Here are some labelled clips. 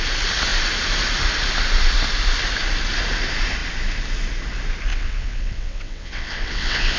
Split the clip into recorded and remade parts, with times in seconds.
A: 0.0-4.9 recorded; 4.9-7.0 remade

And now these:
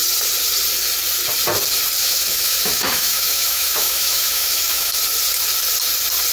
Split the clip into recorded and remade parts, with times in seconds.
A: 0.0-2.0 recorded; 2.0-5.0 remade; 5.0-6.3 recorded

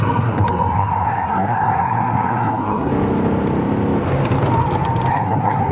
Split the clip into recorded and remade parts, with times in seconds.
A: 0.0-2.9 remade; 2.9-5.1 recorded; 5.1-5.7 remade

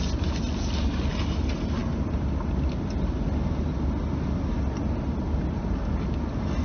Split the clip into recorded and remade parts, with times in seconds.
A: 0.0-6.6 recorded